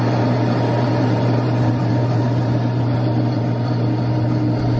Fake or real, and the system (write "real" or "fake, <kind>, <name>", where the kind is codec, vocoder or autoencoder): real